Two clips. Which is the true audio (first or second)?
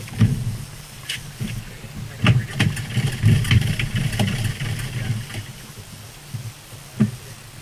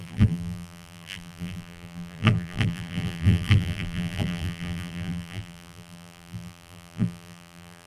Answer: first